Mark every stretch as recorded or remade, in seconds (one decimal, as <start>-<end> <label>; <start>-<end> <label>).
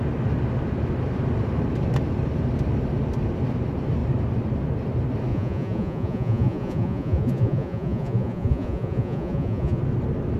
0.0-5.3 recorded; 5.3-9.8 remade; 9.8-10.4 recorded